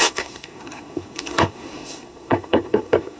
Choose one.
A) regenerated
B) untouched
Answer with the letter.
A